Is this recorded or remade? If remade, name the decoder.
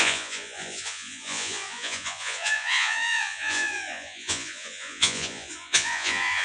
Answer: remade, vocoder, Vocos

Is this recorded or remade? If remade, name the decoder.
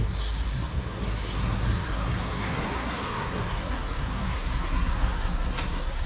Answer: remade, codec, SNAC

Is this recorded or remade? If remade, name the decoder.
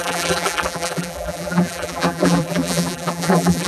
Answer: remade, vocoder, BigVGAN v2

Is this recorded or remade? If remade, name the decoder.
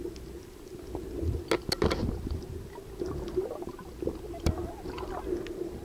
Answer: recorded